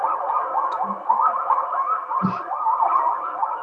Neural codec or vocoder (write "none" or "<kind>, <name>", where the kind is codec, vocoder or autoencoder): none